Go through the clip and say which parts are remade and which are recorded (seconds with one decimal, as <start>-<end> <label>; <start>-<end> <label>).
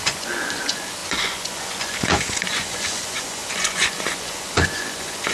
0.0-5.3 remade